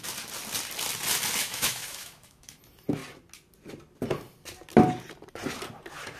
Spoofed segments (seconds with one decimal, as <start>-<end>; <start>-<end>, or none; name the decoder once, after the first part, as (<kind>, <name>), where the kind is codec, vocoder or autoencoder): 1.4-2.6 (autoencoder, DAC-VAE)